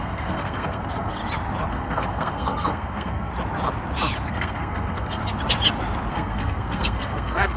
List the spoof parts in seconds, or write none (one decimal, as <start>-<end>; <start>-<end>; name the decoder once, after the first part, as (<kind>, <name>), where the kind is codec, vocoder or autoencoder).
0.0-1.2 (codec, SNAC); 1.7-3.3; 4.3-5.2; 6.1-7.6